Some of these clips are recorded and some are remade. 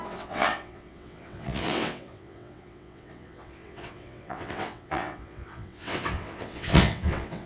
remade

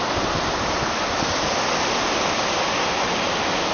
recorded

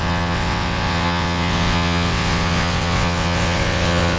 remade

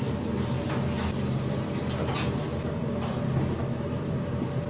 recorded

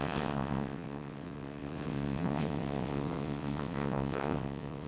remade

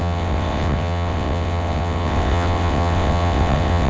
remade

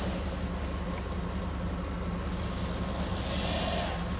recorded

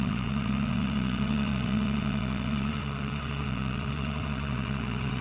remade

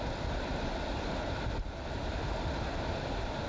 recorded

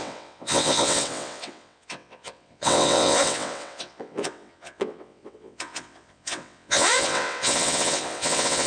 remade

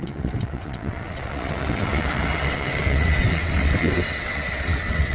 remade